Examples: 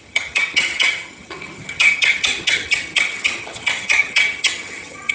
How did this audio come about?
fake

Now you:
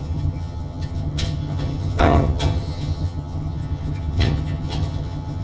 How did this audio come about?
fake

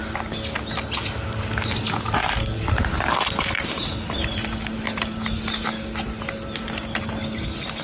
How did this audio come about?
real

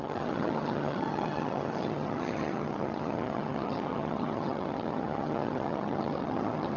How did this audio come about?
fake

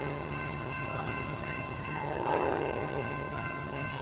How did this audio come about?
fake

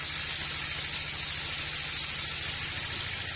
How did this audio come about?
real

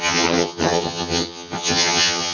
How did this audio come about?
fake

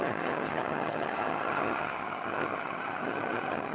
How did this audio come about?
fake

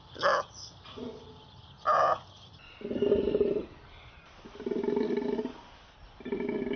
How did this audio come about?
real